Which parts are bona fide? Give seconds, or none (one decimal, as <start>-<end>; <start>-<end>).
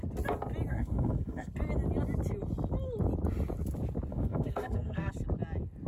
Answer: 0.0-0.7; 1.5-4.1; 5.1-5.9